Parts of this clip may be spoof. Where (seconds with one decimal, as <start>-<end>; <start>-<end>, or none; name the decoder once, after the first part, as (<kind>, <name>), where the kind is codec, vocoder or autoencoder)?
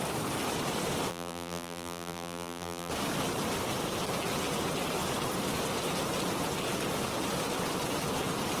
1.1-2.9 (vocoder, BigVGAN v2)